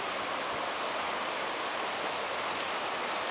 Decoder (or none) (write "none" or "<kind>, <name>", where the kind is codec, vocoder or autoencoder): none